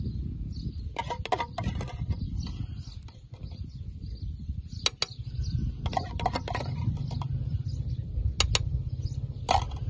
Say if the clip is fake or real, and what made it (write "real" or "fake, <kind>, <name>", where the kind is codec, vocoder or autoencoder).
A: real